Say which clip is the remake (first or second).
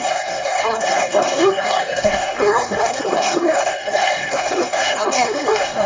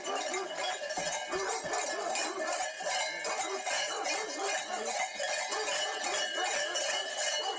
first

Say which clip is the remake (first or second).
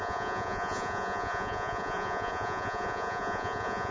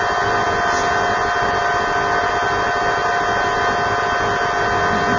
first